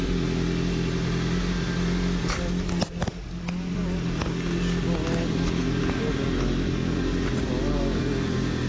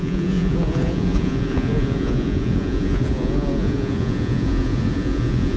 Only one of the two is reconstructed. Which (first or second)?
second